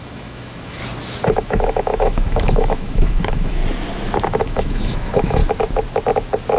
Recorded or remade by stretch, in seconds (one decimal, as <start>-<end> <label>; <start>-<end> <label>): 0.0-0.8 remade; 0.8-1.3 recorded; 1.3-3.6 remade; 3.6-4.4 recorded; 4.4-5.4 remade; 5.4-6.6 recorded